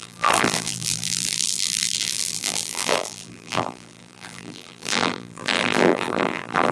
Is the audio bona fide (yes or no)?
no